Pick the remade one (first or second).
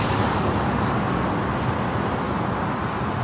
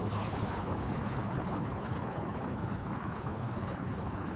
second